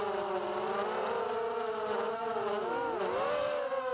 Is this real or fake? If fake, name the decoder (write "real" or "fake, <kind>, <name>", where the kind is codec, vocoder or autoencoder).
real